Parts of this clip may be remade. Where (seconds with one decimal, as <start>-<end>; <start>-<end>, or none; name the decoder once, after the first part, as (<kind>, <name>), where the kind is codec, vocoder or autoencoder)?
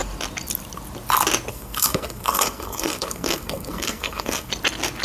1.5-4.5 (codec, SNAC)